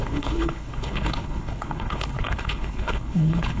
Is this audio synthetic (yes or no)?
yes